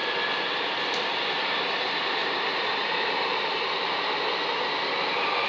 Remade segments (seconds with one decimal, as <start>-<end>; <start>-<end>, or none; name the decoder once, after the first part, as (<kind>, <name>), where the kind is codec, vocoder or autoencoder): 0.0-0.8 (vocoder, BigVGAN v2); 2.2-4.2